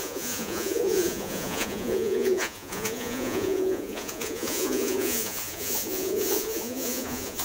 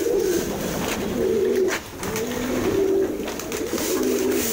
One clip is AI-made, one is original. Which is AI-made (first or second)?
first